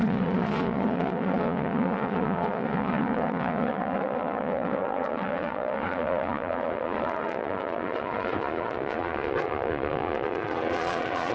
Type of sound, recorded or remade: remade